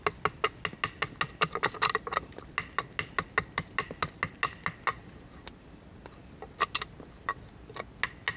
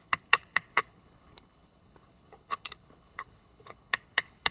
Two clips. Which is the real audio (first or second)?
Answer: first